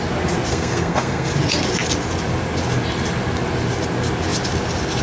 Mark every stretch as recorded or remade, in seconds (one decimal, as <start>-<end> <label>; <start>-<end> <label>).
0.0-0.5 recorded; 0.5-1.3 remade; 1.3-5.0 recorded